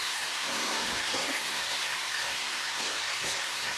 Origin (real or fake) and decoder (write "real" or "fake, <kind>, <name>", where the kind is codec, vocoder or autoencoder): fake, codec, SNAC